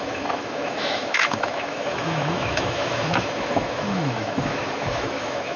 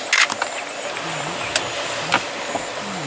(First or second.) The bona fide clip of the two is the second